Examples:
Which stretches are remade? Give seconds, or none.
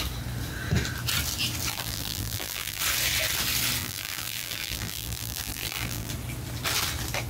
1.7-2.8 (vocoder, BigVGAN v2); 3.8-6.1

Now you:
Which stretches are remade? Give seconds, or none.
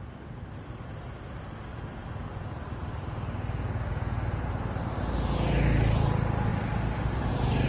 none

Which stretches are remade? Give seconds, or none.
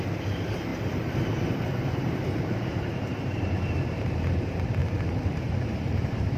0.0-4.8 (vocoder, BigVGAN v2); 5.6-6.4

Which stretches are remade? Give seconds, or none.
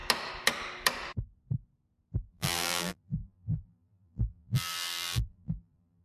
2.3-6.0 (vocoder, BigVGAN v2)